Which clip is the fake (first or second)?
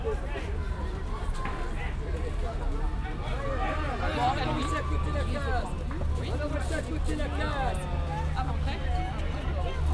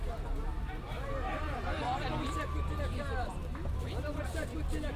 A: second